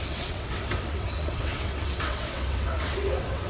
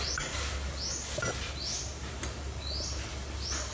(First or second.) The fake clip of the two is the first